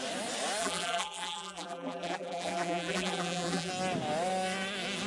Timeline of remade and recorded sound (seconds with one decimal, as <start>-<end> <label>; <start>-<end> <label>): 0.0-0.6 recorded; 0.6-3.7 remade; 3.7-5.1 recorded